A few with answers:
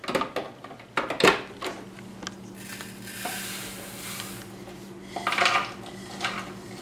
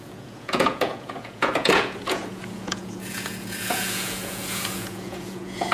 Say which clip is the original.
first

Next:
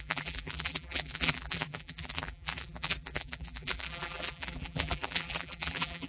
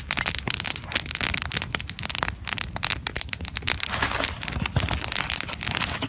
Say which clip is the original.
second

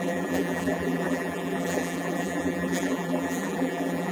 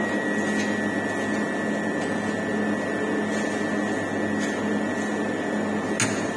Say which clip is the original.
second